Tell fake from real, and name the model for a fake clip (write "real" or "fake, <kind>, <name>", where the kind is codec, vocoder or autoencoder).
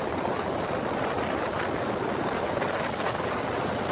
real